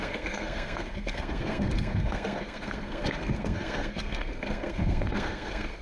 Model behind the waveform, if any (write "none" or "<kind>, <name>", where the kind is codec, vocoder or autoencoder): codec, SNAC